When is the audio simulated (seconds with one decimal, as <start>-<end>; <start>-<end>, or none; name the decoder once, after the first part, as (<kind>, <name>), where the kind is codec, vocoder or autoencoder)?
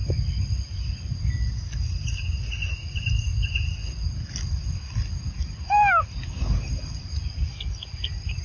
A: none